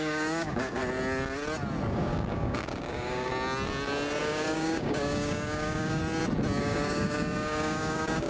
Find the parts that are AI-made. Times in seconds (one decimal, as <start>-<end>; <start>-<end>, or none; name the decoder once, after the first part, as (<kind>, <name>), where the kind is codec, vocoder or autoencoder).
0.0-0.8 (codec, DAC); 1.9-3.3; 4.2-6.0; 6.6-8.3